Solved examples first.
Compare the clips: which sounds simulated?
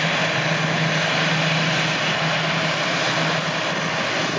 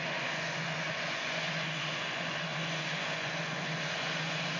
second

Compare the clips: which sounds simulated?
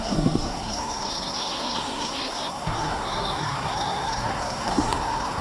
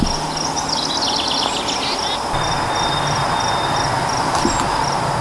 first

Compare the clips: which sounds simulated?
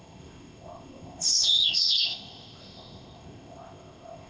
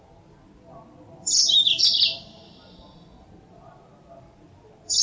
first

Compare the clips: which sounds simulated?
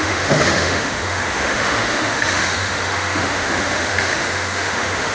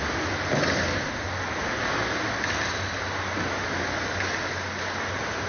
first